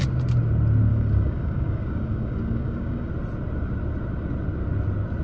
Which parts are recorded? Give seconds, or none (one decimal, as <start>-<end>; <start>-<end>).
0.0-0.9; 3.1-5.2